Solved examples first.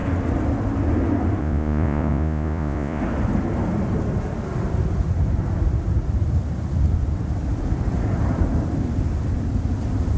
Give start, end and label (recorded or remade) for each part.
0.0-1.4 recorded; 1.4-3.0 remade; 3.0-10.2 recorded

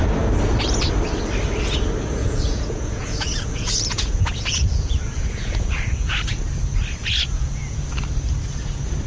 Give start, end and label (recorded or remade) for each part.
0.0-2.2 recorded; 2.2-6.4 remade; 6.4-7.0 recorded; 7.0-7.8 remade; 7.8-9.1 recorded

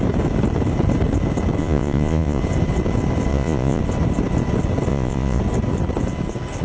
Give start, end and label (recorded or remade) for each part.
0.0-1.6 recorded; 1.6-2.4 remade; 2.4-3.3 recorded; 3.3-3.8 remade; 3.8-4.9 recorded; 4.9-5.4 remade; 5.4-6.6 recorded

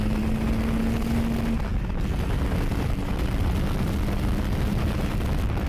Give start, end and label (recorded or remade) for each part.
0.0-5.7 recorded

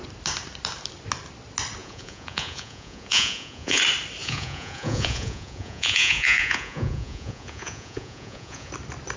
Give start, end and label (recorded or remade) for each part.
0.0-1.8 recorded; 1.8-3.8 remade; 3.8-4.2 recorded; 4.2-8.7 remade; 8.7-9.2 recorded

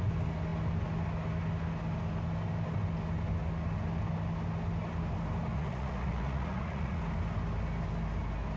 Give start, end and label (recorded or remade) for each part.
0.0-5.5 recorded; 5.5-7.0 remade; 7.0-8.6 recorded